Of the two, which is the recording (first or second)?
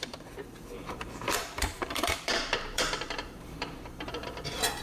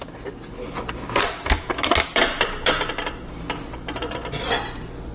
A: second